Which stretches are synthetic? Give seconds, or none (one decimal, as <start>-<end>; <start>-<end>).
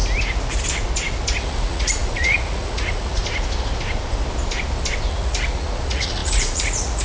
1.4-3.2; 5.1-7.0